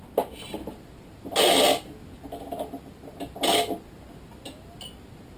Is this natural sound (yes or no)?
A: yes